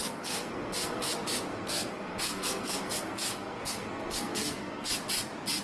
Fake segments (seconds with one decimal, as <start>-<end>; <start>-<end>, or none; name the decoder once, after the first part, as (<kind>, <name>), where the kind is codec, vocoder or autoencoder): 0.0-1.1 (codec, SNAC); 1.5-4.9